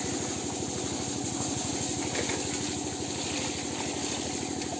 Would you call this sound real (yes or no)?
yes